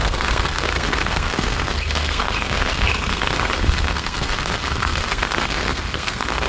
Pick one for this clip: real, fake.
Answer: fake